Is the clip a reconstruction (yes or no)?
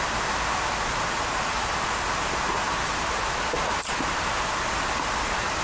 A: no